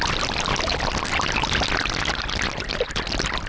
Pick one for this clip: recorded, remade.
recorded